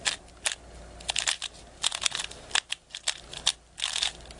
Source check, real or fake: real